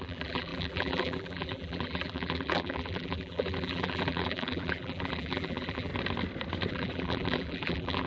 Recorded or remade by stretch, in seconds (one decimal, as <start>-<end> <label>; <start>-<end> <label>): 0.0-5.9 remade; 5.9-6.7 recorded; 6.7-8.1 remade